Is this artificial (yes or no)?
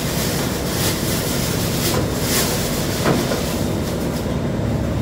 no